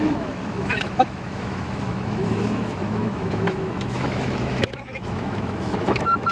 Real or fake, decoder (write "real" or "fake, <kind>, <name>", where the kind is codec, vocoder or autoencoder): fake, autoencoder, DAC-VAE